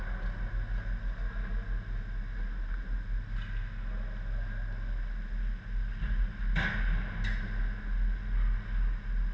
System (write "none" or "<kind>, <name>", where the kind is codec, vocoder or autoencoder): none